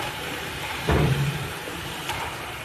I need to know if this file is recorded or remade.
remade